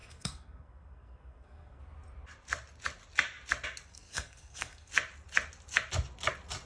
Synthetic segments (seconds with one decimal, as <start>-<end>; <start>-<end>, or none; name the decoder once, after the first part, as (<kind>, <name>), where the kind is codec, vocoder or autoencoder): 0.0-1.8 (codec, SNAC); 3.9-4.9